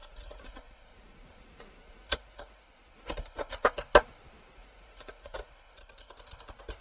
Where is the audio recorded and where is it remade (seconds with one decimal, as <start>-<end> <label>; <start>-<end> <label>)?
0.0-2.6 remade; 2.6-4.6 recorded; 4.6-5.5 remade; 5.5-6.8 recorded